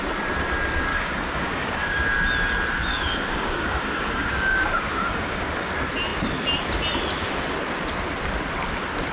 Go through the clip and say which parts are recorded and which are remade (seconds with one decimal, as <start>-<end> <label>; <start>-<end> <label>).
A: 0.0-0.9 recorded; 0.9-2.1 remade; 2.1-2.9 recorded; 2.9-5.5 remade; 5.5-9.1 recorded